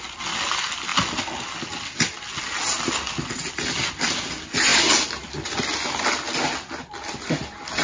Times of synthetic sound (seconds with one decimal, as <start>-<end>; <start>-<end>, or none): none